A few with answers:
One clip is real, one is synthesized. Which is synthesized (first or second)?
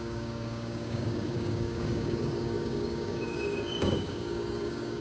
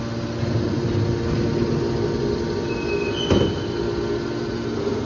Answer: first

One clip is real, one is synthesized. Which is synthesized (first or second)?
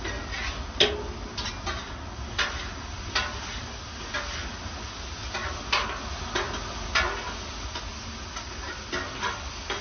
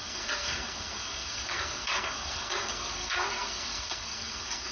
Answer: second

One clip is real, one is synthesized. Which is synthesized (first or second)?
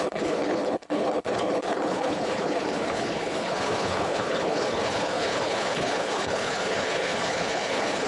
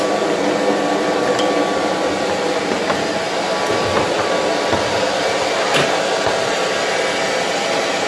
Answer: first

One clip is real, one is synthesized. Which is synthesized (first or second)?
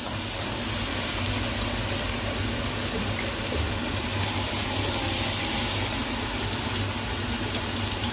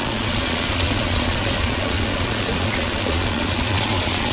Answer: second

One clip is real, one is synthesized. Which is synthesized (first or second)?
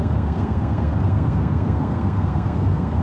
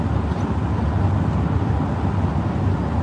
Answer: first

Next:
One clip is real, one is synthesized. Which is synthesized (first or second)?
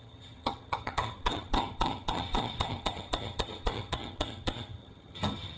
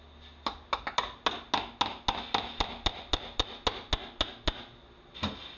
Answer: first